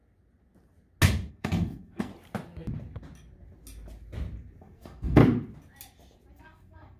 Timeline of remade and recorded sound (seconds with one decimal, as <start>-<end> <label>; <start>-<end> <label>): 0.0-1.3 recorded; 1.3-2.1 remade; 2.1-4.6 recorded; 4.6-5.2 remade; 5.2-6.3 recorded; 6.3-7.0 remade